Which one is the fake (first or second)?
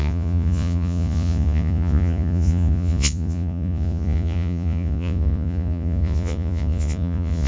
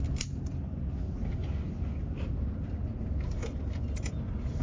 first